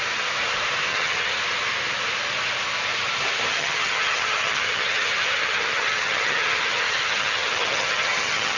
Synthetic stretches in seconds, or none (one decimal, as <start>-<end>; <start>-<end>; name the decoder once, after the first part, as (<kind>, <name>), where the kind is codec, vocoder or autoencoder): 0.9-1.4 (vocoder, HiFi-GAN); 3.5-8.6